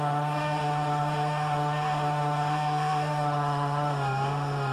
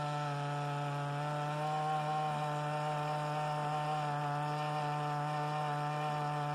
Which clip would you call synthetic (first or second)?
first